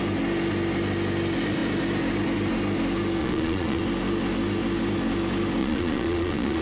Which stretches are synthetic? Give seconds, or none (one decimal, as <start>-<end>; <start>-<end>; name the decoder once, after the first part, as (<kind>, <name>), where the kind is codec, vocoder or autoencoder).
3.2-3.8 (vocoder, Vocos); 5.6-6.6